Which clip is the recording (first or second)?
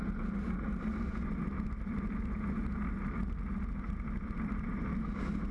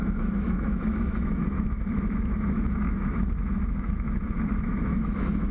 first